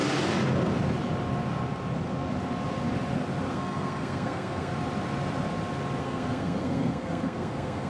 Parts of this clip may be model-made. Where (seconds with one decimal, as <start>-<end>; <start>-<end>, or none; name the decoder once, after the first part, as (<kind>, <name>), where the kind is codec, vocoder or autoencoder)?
3.5-4.7 (codec, SNAC); 6.0-7.9